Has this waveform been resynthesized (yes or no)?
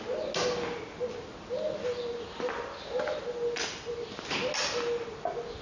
no